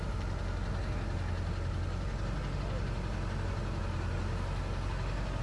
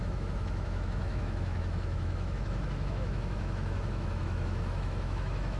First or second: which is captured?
first